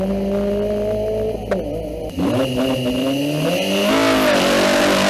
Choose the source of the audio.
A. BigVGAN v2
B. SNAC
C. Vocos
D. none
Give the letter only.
D